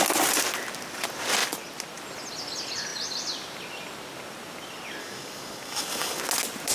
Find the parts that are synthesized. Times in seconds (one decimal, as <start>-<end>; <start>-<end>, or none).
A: 5.0-6.2